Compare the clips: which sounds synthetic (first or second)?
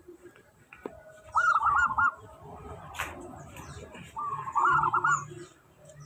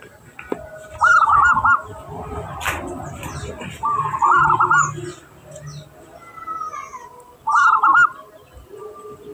first